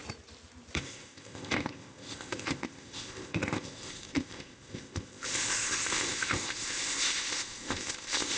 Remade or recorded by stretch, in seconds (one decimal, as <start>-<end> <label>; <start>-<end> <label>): 0.0-0.8 recorded; 0.8-8.4 remade